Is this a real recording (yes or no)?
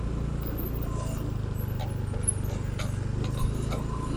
yes